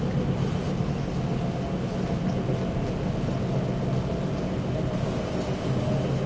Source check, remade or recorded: recorded